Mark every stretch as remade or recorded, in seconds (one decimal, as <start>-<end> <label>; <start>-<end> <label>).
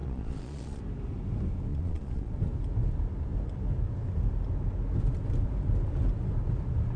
0.0-0.8 remade; 0.8-1.7 recorded; 1.7-2.3 remade; 2.3-7.0 recorded